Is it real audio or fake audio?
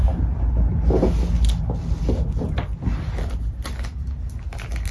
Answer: real